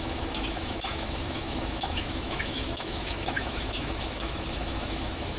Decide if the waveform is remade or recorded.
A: remade